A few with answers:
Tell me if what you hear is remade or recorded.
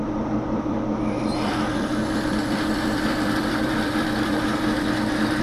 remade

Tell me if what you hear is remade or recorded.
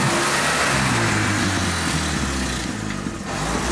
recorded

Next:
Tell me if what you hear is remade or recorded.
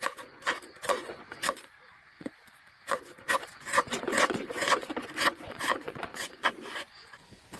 remade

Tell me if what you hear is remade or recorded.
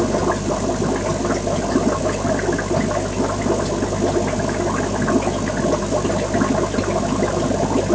recorded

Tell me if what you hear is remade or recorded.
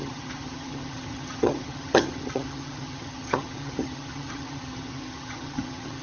remade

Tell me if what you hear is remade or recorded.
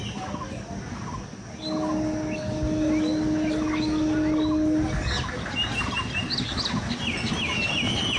recorded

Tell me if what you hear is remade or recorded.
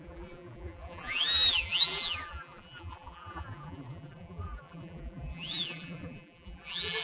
remade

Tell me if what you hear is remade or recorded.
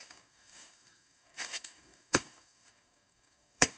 remade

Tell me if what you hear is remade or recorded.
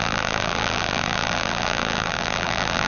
remade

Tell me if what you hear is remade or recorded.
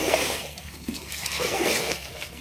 remade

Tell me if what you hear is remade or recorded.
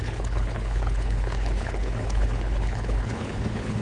remade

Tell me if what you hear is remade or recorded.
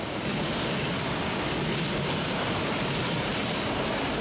recorded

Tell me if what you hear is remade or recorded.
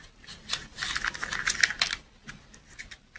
recorded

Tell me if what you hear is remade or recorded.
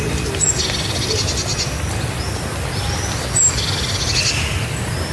recorded